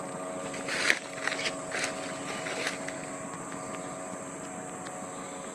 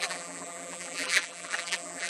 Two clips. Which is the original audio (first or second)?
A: first